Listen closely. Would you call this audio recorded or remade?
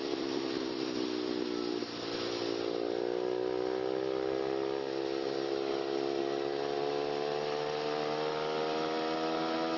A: recorded